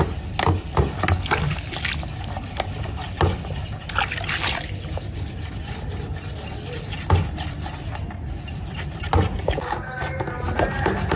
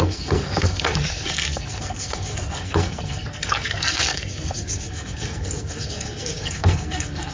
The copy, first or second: second